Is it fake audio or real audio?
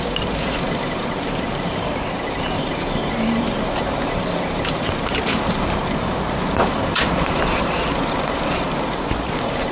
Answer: fake